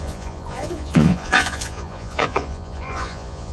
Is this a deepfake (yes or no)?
yes